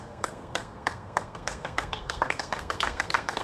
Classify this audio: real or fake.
fake